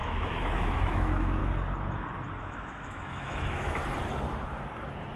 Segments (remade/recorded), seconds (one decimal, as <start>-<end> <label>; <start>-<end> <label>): 0.0-1.4 remade; 1.4-2.4 recorded; 2.4-3.8 remade; 3.8-5.2 recorded